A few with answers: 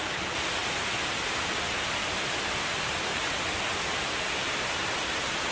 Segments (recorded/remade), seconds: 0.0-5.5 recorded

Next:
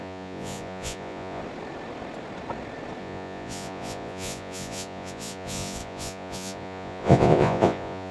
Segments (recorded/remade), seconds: 0.0-1.4 remade; 1.4-3.0 recorded; 3.0-8.1 remade

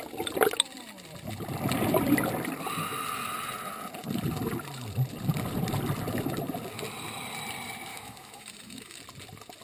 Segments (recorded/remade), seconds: 0.0-7.9 recorded; 7.9-9.0 remade; 9.0-9.6 recorded

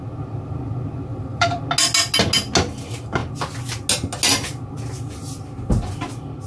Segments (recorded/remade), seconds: 0.0-1.1 recorded; 1.1-1.6 remade; 1.6-6.5 recorded